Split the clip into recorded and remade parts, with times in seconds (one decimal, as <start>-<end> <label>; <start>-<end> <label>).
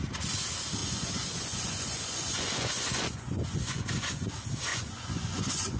0.0-0.8 recorded; 0.8-4.3 remade; 4.3-4.7 recorded; 4.7-5.8 remade